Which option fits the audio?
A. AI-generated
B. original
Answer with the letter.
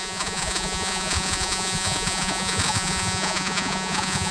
A